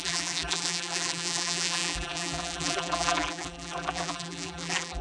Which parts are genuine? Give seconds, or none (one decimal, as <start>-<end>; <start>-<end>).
none